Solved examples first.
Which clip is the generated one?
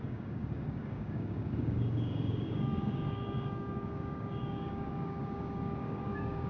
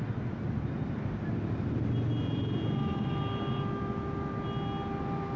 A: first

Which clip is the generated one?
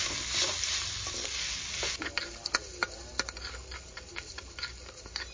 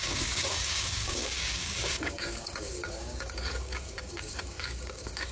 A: second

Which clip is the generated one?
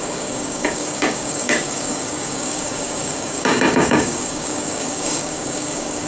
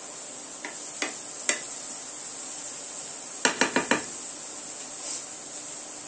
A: first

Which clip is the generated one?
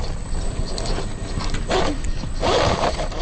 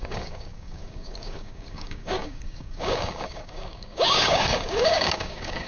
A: second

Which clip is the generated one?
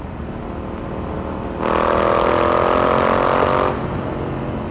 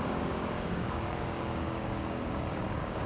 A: second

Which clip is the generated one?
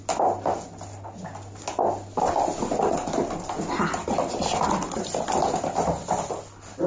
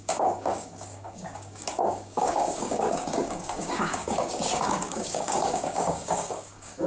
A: second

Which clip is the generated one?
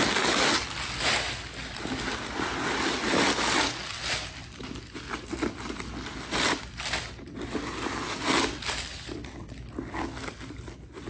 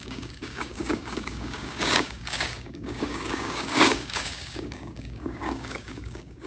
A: second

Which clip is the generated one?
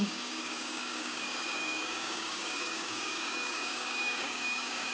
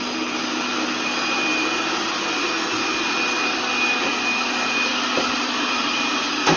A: first